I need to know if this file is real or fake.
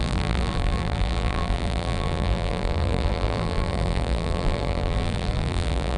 fake